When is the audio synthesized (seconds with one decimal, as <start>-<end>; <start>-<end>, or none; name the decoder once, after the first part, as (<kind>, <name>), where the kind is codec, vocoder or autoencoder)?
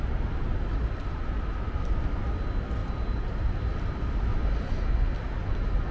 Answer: 2.8-3.6 (vocoder, BigVGAN v2); 4.3-4.9